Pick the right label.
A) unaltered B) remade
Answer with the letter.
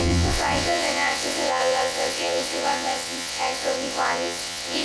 B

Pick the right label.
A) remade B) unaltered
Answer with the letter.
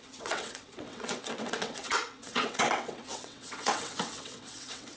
A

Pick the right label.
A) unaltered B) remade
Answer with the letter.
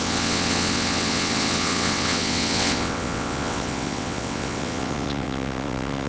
B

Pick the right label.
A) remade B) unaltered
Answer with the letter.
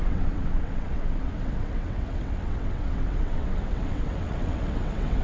A